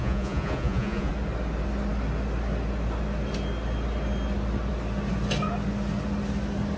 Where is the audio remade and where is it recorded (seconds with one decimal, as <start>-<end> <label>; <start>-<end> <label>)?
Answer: 0.0-1.1 remade; 1.1-6.8 recorded